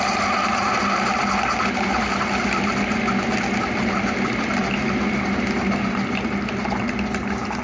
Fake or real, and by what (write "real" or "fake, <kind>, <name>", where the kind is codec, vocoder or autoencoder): real